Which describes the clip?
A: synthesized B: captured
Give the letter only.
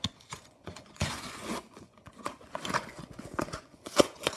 A